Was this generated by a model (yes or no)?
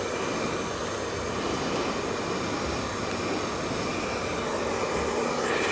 no